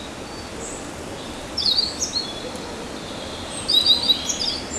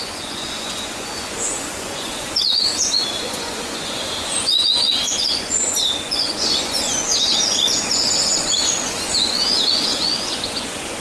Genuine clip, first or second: first